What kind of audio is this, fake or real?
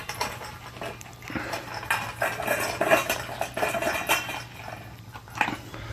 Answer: real